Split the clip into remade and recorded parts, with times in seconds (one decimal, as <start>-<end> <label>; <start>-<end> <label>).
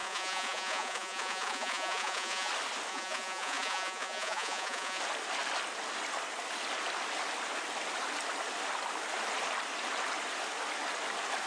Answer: 0.0-2.5 remade; 2.5-2.9 recorded; 2.9-5.0 remade; 5.0-11.5 recorded